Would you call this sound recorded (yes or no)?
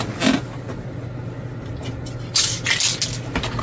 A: yes